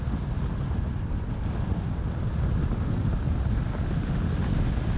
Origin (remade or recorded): recorded